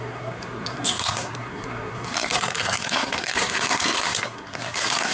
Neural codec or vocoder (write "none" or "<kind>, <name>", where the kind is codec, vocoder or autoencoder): codec, SNAC